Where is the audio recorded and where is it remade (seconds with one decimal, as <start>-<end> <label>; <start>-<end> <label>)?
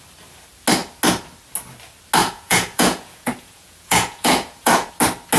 0.0-2.2 recorded; 2.2-4.9 remade; 4.9-5.4 recorded